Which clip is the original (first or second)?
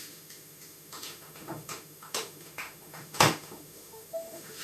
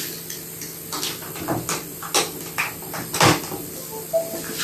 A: second